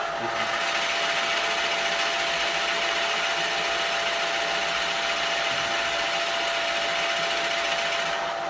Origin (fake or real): real